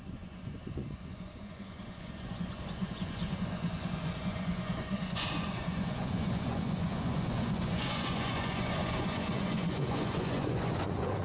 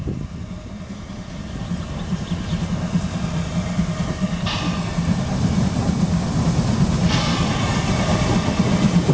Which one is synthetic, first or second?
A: first